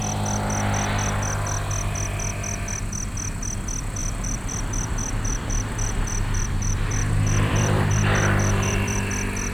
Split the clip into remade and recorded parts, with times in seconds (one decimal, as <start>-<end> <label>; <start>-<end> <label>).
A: 0.0-4.0 recorded; 4.0-9.0 remade; 9.0-9.5 recorded